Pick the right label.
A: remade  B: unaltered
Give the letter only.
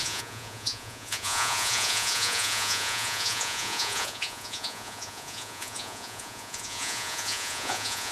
A